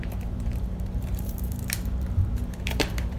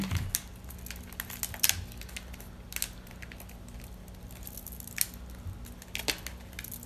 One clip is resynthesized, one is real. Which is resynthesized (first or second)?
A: first